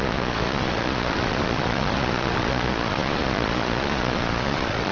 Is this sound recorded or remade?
remade